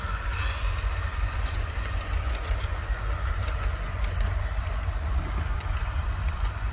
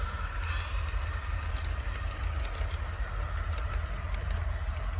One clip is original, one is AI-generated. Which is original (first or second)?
second